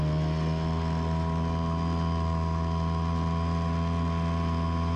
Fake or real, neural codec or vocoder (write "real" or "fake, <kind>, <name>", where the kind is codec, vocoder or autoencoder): real